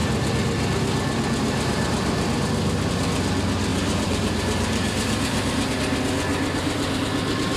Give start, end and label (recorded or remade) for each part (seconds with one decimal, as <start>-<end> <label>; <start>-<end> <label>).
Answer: 0.0-3.7 recorded; 3.7-5.7 remade; 5.7-6.3 recorded; 6.3-7.0 remade; 7.0-7.6 recorded